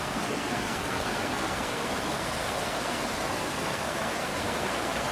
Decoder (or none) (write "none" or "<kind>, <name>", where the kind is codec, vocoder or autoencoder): codec, SNAC